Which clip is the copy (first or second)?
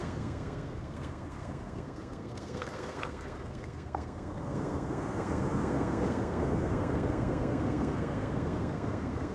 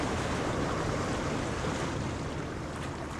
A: first